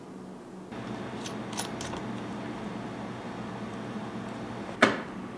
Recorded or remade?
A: recorded